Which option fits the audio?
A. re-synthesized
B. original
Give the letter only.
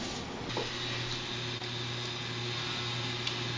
B